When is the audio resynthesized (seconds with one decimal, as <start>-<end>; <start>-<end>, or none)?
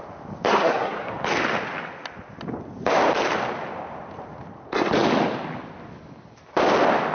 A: 0.5-1.1